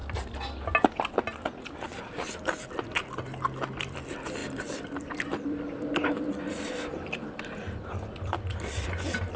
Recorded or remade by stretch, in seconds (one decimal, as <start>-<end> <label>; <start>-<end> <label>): 0.0-4.4 recorded; 4.4-7.4 remade; 7.4-9.4 recorded